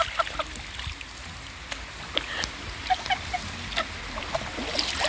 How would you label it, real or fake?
real